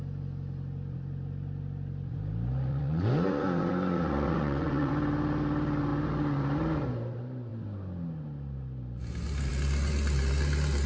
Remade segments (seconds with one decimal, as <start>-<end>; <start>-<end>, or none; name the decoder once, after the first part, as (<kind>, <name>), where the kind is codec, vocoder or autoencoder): 2.7-4.9 (vocoder, Vocos)